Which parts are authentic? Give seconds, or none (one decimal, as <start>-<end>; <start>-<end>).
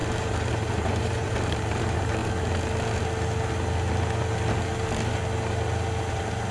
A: 2.2-6.1